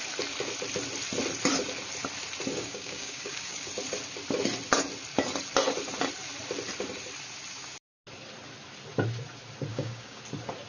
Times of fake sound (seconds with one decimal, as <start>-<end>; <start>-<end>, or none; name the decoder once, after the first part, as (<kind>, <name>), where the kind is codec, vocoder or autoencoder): 2.5-3.7 (codec, DAC); 9.7-10.2